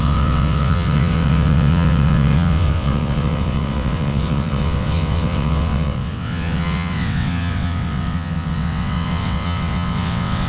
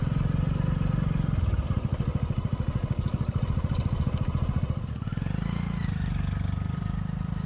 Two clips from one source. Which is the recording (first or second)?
second